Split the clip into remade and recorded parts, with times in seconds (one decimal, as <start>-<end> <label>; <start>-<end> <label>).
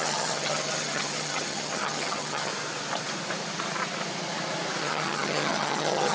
0.0-2.5 remade; 2.5-4.8 recorded; 4.8-6.1 remade